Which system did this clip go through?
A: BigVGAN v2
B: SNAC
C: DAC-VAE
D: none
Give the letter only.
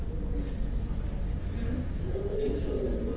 D